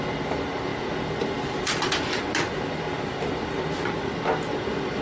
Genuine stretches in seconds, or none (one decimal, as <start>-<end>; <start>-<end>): 0.0-5.0